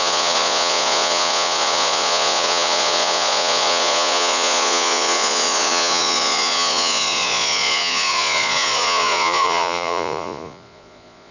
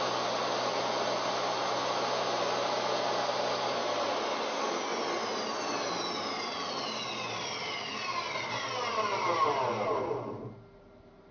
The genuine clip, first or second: second